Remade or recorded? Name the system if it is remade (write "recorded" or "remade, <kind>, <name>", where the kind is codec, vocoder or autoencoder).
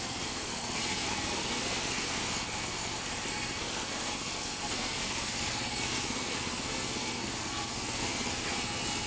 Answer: remade, codec, SNAC